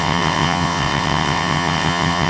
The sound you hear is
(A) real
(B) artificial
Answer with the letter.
B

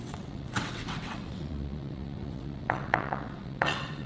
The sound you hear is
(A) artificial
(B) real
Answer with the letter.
A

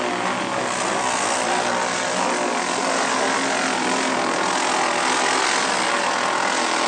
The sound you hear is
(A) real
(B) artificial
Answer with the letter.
A